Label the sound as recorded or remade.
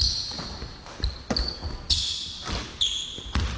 recorded